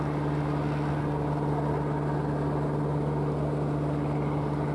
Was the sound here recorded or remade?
recorded